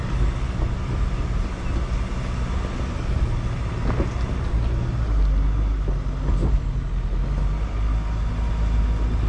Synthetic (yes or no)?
no